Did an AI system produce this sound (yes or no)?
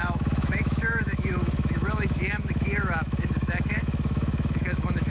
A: yes